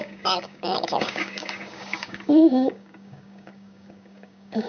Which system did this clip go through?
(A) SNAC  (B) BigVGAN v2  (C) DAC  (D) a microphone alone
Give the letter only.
C